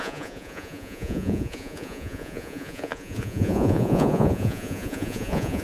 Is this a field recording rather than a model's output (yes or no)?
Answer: no